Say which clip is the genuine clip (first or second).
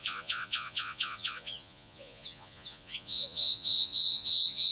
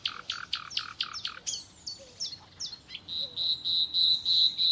second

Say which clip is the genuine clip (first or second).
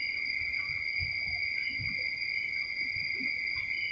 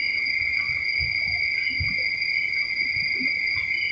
second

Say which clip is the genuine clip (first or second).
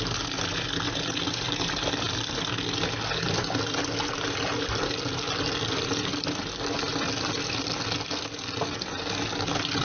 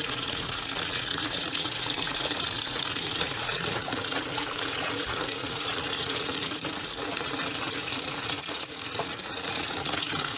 first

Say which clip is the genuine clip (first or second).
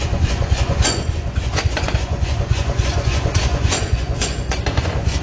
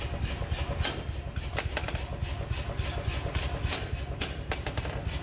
second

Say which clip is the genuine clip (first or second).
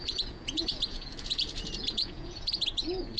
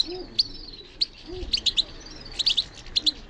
second